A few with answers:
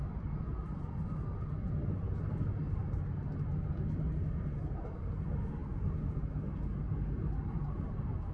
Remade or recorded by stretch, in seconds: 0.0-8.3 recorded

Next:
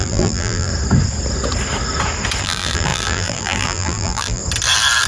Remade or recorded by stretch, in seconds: 0.0-0.7 remade; 0.7-2.4 recorded; 2.4-4.4 remade; 4.4-5.1 recorded

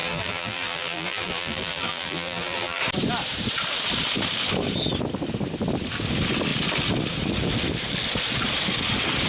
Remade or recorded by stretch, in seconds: 0.0-2.8 remade; 2.8-9.3 recorded

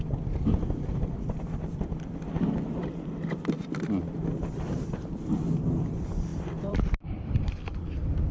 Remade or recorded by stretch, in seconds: 0.0-6.3 recorded; 6.3-7.5 remade; 7.5-8.3 recorded